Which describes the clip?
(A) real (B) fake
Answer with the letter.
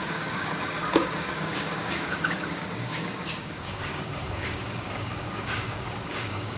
B